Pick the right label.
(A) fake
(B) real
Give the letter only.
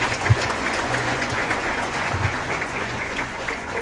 A